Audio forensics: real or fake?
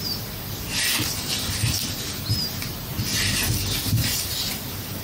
real